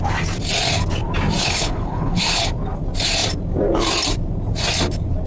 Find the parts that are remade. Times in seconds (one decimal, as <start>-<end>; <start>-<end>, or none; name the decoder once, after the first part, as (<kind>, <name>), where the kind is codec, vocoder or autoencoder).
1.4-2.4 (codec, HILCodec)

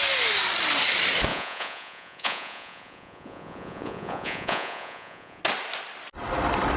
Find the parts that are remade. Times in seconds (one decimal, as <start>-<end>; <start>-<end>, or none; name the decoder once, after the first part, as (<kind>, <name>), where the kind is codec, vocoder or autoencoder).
1.3-5.4 (vocoder, Vocos)

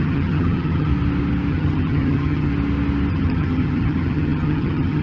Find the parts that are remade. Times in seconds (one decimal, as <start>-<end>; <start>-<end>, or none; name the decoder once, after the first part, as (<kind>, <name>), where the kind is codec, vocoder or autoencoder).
0.0-0.9 (vocoder, HiFi-GAN); 1.5-2.5; 3.1-5.0

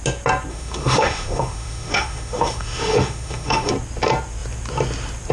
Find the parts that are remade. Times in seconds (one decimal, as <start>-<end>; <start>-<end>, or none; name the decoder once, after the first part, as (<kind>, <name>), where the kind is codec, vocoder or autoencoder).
0.5-3.7 (autoencoder, DAC-VAE)

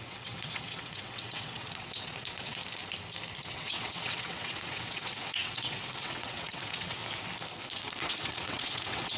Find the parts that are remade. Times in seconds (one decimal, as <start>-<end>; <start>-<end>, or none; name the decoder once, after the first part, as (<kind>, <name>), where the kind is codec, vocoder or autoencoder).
0.0-2.6 (vocoder, WaveNeXt); 3.5-7.0; 8.0-9.2

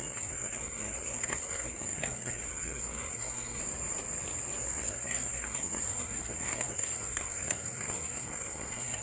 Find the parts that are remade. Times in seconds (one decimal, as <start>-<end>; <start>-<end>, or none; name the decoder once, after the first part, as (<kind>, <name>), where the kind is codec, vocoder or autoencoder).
0.0-3.6 (codec, SNAC); 4.6-9.0

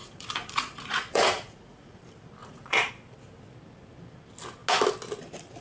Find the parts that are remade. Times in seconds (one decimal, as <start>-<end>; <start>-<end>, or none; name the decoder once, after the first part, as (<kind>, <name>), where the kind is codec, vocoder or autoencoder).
0.0-2.0 (vocoder, Vocos); 2.4-2.9